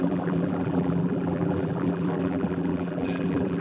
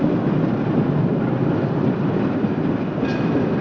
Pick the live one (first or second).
second